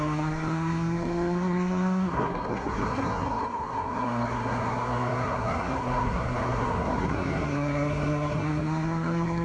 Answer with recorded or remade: remade